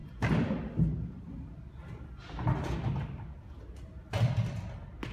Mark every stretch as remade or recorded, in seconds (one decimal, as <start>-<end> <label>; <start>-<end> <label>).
0.0-5.1 recorded